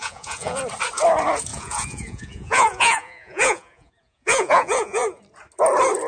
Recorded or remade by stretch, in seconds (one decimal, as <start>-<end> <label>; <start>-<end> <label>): 0.0-0.6 remade; 0.6-1.5 recorded; 1.5-5.2 remade; 5.2-6.1 recorded

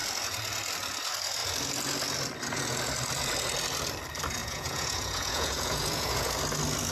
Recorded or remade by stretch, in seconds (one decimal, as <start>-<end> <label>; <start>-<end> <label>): 0.0-4.4 recorded; 4.4-6.3 remade; 6.3-6.9 recorded

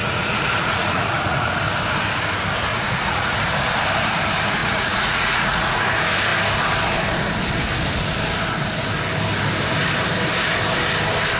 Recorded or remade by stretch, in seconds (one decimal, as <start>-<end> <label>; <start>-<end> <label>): 0.0-1.5 remade; 1.5-2.7 recorded; 2.7-3.3 remade; 3.3-4.6 recorded; 4.6-5.8 remade; 5.8-11.4 recorded